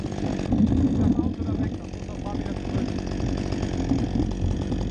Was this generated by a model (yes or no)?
no